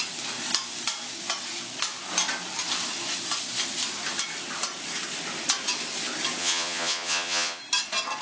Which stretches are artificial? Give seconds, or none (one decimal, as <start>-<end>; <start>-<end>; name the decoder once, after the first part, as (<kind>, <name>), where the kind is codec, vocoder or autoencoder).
6.4-7.6 (vocoder, Vocos)